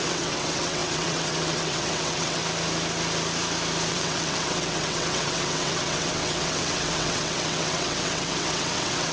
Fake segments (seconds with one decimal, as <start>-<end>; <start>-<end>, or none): 0.0-2.4; 3.9-9.1